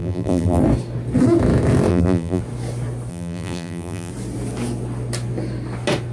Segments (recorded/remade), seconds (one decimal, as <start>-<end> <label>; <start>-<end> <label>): 0.0-0.6 remade; 0.6-1.9 recorded; 1.9-2.4 remade; 2.4-3.1 recorded; 3.1-4.1 remade; 4.1-6.1 recorded